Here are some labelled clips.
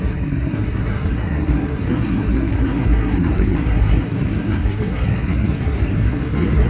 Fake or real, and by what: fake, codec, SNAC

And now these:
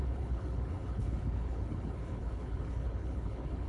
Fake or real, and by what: fake, codec, HILCodec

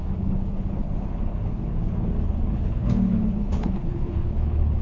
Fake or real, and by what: fake, codec, HILCodec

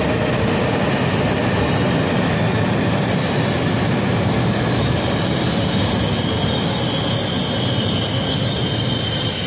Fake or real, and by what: real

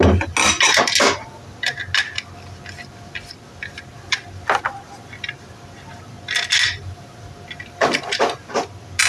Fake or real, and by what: real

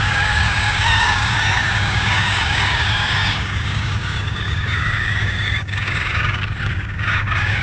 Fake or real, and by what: fake, codec, DAC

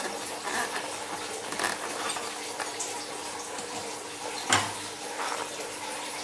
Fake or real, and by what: real